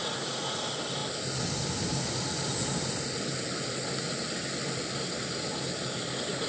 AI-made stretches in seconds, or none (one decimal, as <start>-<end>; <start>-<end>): 0.0-0.6